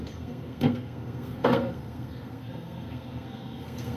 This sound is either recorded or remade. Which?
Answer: remade